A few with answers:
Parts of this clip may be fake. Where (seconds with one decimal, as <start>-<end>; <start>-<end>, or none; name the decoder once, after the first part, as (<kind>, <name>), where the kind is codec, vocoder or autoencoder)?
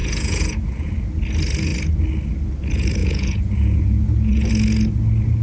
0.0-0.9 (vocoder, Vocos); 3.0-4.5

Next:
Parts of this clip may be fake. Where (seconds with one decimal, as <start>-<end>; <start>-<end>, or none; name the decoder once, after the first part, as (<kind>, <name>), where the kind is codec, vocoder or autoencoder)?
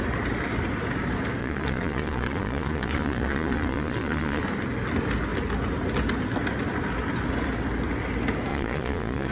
1.4-4.4 (vocoder, Vocos); 8.5-9.3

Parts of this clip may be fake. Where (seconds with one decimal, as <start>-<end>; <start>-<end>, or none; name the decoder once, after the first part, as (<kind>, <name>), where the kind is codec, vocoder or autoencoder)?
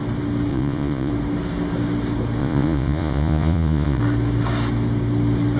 0.5-1.1 (vocoder, Vocos); 2.4-4.0